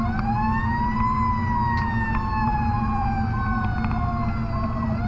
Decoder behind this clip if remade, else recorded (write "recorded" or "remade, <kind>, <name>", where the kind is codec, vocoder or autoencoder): recorded